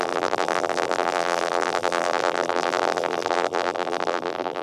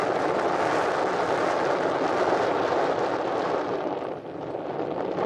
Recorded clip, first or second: second